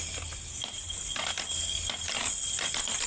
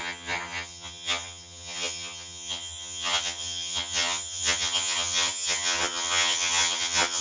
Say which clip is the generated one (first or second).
second